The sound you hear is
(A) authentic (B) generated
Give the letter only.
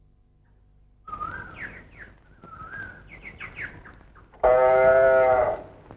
A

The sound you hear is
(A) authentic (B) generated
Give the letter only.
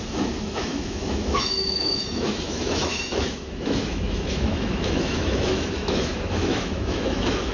B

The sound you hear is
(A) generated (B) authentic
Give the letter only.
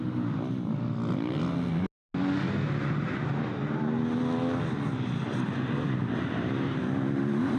B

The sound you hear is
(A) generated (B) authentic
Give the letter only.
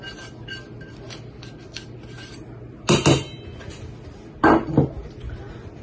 B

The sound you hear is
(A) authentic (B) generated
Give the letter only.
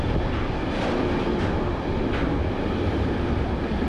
A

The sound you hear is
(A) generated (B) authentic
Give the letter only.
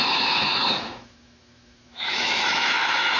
A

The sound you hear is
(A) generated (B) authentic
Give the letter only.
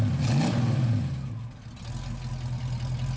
B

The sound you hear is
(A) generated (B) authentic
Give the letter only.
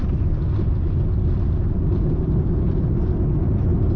B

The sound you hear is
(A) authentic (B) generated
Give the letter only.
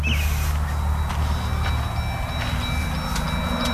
A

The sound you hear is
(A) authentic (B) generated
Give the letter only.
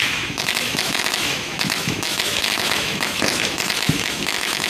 B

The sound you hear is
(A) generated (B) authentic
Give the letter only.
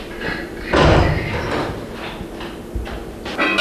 B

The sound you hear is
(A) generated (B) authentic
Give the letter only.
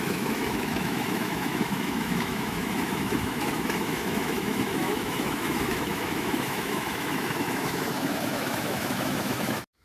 A